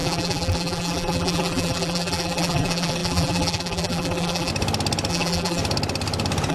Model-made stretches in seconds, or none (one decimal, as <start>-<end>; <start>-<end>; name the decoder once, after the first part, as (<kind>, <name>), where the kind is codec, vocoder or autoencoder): 0.0-4.5 (vocoder, BigVGAN v2); 5.1-5.6